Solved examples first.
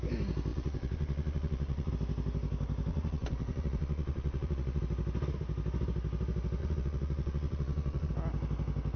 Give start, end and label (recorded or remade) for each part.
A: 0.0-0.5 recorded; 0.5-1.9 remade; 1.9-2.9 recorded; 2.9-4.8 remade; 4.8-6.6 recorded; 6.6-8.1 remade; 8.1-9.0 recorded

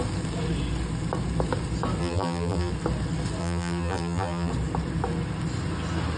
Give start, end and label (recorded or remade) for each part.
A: 0.0-2.0 recorded; 2.0-2.7 remade; 2.7-3.4 recorded; 3.4-4.5 remade; 4.5-6.2 recorded